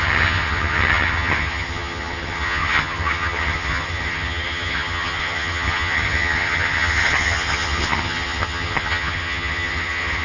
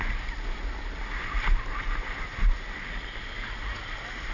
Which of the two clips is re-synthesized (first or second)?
first